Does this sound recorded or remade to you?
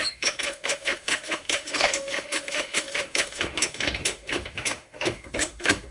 remade